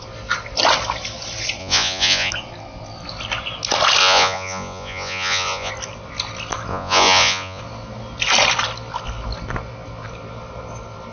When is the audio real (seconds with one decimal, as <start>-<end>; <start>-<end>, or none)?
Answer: 0.0-1.6; 2.3-4.0; 5.7-6.7; 7.6-11.1